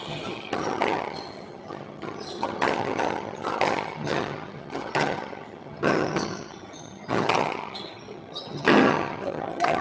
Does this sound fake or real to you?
fake